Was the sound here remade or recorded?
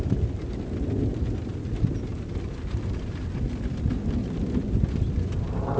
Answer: recorded